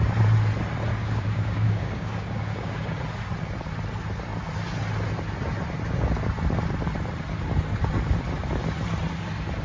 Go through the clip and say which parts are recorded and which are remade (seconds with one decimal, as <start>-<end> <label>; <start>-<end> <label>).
0.0-0.9 recorded; 0.9-3.0 remade; 3.0-9.6 recorded